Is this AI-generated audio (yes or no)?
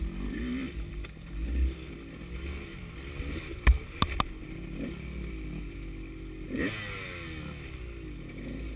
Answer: no